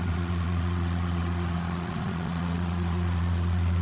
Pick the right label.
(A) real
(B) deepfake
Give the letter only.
B